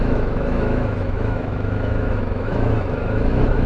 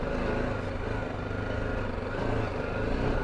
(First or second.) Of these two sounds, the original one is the second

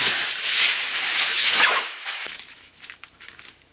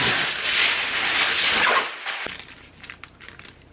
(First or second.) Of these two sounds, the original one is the second